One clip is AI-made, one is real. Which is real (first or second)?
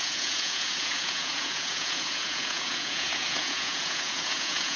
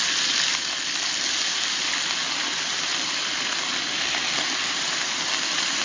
second